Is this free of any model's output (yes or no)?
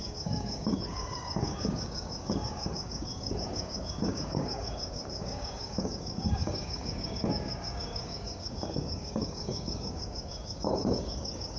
no